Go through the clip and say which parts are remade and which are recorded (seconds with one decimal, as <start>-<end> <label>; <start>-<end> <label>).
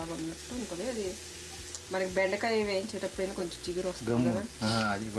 0.0-5.2 recorded